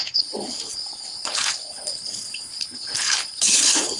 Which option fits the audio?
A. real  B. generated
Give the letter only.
B